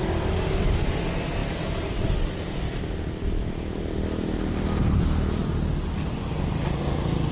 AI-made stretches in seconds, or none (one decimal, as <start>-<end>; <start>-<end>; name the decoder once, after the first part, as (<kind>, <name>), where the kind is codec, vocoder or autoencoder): 1.4-5.4 (vocoder, BigVGAN v2)